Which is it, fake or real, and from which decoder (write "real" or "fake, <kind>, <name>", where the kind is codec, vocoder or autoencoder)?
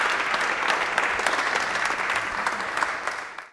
real